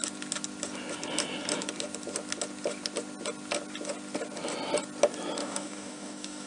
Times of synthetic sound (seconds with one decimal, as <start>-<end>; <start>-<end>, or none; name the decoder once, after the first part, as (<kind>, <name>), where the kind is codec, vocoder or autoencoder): 5.4-6.5 (codec, DAC)